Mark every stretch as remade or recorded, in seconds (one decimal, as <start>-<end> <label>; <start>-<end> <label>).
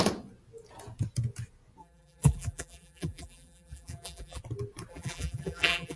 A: 0.0-1.8 recorded; 1.8-4.4 remade; 4.4-4.9 recorded; 4.9-6.0 remade